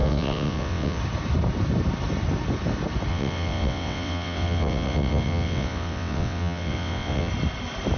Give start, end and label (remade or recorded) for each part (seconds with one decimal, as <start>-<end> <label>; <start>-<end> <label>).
0.0-1.0 remade; 1.0-3.1 recorded; 3.1-7.3 remade; 7.3-8.0 recorded